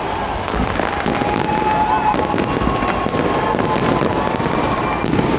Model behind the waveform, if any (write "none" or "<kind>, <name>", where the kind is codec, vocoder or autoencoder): none